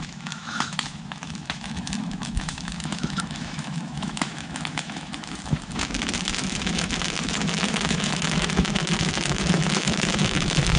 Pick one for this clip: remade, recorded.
remade